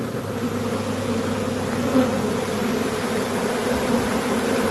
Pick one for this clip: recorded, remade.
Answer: recorded